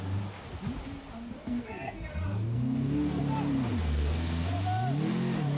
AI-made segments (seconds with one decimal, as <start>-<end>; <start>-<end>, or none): 1.4-3.2; 3.8-4.5